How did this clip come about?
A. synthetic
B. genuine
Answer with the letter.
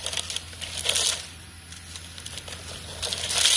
B